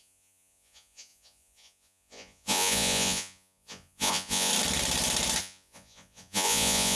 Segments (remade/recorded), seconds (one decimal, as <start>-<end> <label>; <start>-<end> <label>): 0.0-4.5 remade; 4.5-5.4 recorded; 5.4-7.0 remade